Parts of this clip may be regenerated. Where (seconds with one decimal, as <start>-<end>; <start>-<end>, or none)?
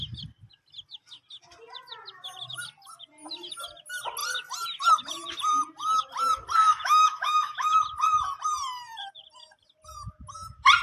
6.6-7.8